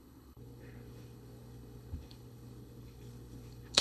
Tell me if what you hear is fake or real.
fake